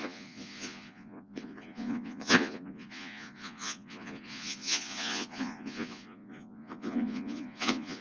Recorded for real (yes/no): no